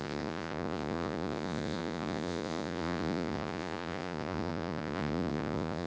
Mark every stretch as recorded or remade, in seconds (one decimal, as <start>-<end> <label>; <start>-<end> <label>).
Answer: 0.0-5.9 remade